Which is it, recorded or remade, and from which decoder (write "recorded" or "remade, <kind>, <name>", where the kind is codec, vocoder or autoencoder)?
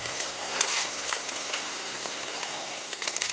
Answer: remade, codec, SNAC